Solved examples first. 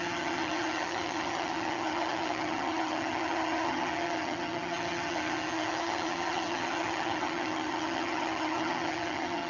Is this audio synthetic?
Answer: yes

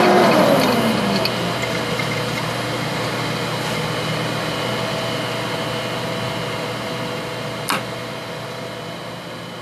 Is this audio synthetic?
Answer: no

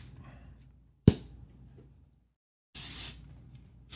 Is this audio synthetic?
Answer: no